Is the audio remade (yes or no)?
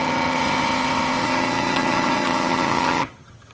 yes